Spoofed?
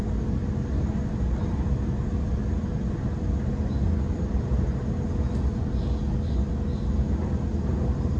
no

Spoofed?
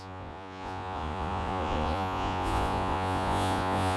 yes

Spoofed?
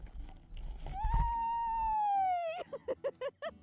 no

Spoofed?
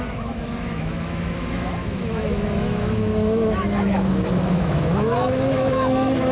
yes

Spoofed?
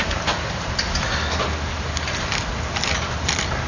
no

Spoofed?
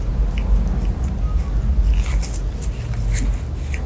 no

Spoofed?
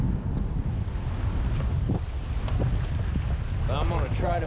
no